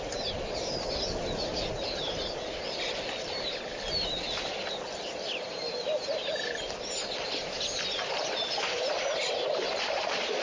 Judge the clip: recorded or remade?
recorded